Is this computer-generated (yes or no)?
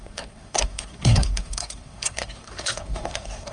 yes